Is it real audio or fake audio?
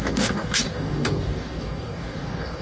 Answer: fake